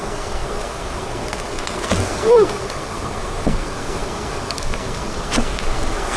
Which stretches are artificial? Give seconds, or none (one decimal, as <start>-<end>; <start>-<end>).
0.0-6.2